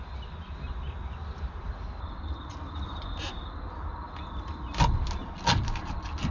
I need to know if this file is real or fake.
real